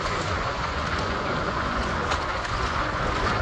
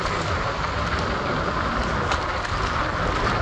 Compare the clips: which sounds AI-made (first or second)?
first